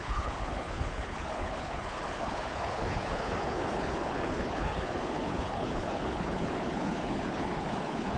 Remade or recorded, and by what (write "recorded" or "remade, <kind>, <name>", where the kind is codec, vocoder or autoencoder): remade, codec, HILCodec